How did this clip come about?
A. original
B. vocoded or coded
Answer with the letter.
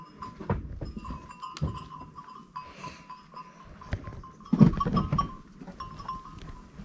A